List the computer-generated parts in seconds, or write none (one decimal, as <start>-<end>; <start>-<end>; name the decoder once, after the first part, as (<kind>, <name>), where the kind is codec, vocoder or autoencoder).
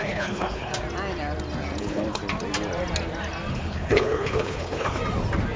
0.0-0.7 (codec, HILCodec); 1.8-2.2; 3.5-5.0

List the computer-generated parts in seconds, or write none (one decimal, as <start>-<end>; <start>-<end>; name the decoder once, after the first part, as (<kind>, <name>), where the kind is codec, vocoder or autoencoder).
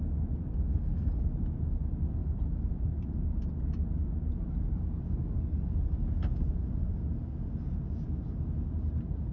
0.7-1.2 (codec, SNAC)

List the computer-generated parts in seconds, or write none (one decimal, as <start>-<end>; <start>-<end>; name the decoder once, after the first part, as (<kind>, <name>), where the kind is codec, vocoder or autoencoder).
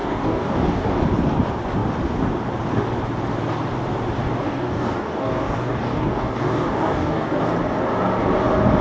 0.0-1.0 (codec, DAC); 4.2-7.4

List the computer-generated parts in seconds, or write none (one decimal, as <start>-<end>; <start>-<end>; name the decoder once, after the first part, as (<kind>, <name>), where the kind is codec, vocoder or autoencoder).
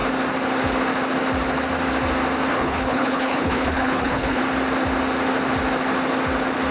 2.5-4.4 (codec, HILCodec)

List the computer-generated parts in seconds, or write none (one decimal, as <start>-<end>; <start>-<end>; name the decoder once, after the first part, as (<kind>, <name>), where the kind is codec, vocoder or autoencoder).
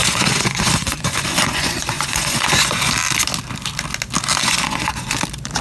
0.0-2.9 (vocoder, Vocos); 4.4-5.1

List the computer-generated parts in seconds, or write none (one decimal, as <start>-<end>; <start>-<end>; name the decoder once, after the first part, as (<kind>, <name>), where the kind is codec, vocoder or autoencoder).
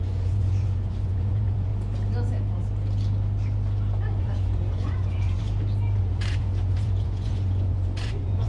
0.0-1.7 (vocoder, Vocos); 4.2-5.4; 6.0-8.5